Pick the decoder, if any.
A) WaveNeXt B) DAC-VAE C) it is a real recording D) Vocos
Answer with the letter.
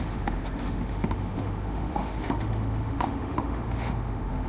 B